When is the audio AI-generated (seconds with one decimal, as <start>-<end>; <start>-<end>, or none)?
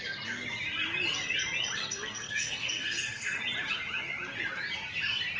1.8-3.4